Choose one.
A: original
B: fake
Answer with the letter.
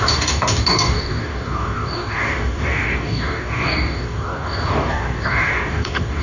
B